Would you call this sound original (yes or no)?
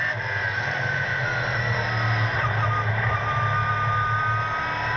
yes